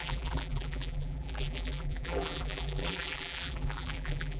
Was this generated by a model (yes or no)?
yes